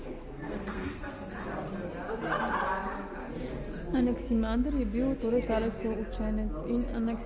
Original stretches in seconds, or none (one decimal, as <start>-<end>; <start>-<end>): 1.3-7.3